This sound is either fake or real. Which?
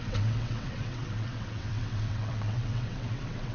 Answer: fake